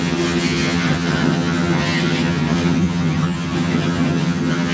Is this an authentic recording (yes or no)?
no